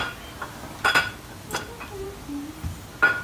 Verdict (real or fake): real